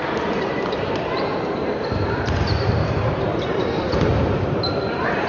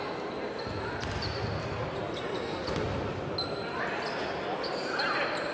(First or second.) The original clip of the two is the second